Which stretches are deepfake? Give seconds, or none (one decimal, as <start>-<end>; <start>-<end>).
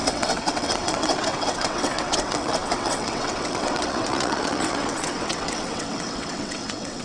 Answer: 0.0-7.0